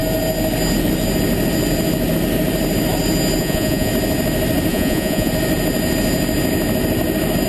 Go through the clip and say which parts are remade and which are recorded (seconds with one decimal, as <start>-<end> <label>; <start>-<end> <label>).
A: 0.0-3.4 recorded; 3.4-3.9 remade; 3.9-4.7 recorded; 4.7-5.3 remade; 5.3-7.5 recorded